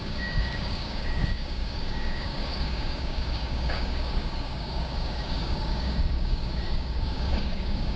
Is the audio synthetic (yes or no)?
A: yes